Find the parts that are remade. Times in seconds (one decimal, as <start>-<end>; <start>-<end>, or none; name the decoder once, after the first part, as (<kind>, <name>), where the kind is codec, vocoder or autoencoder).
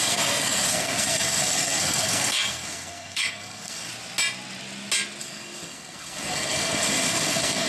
0.0-3.9 (codec, SNAC); 5.2-7.7